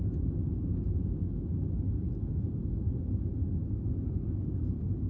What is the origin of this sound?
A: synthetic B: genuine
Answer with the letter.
B